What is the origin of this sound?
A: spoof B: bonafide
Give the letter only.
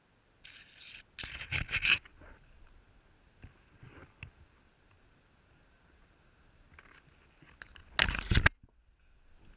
B